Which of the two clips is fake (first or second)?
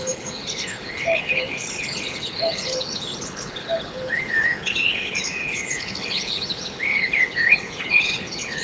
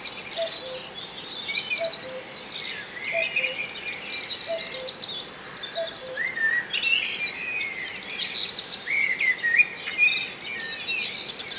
first